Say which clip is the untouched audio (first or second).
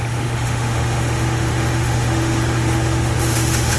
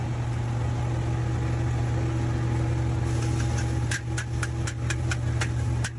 second